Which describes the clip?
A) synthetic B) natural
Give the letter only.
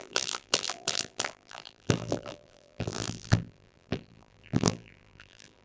A